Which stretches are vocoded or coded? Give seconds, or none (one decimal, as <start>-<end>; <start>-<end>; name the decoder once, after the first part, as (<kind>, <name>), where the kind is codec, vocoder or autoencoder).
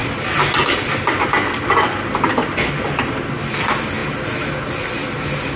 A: none